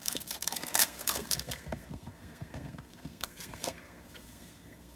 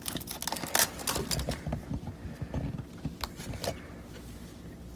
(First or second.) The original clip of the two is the second